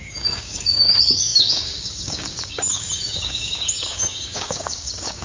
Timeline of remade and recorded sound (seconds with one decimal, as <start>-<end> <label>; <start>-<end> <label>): 0.0-5.2 remade